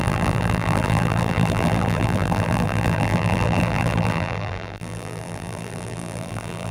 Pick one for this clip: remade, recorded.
remade